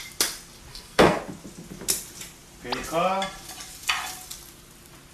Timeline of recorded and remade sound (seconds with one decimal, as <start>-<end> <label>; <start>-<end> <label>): 0.0-0.7 recorded; 0.7-1.2 remade; 1.2-5.1 recorded